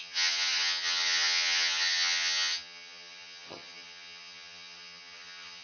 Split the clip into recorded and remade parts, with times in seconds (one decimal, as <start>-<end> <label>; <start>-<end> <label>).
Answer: 0.0-5.6 remade